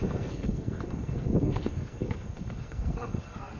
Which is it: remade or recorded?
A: remade